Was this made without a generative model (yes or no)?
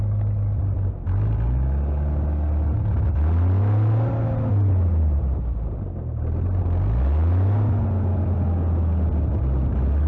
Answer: yes